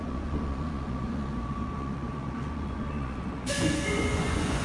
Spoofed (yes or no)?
yes